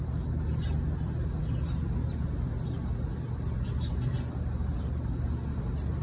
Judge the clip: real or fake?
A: real